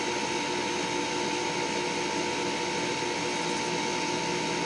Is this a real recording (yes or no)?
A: yes